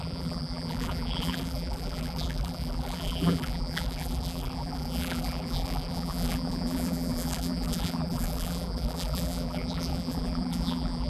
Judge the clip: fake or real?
fake